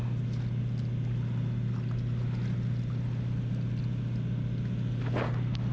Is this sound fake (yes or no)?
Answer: no